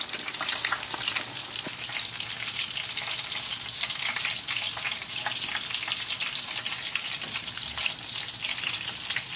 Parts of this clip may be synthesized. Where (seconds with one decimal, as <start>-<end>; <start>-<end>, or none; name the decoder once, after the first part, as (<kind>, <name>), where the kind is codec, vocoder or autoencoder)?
none